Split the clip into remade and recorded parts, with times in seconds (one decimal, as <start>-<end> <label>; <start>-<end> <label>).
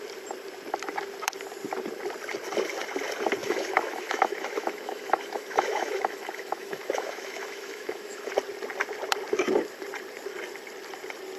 0.0-3.4 recorded; 3.4-8.3 remade; 8.3-11.4 recorded